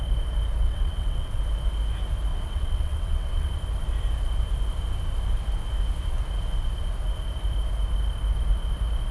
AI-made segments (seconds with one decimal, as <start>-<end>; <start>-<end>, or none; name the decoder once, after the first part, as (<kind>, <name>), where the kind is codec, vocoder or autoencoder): 0.6-1.4 (vocoder, WaveNeXt); 2.3-3.5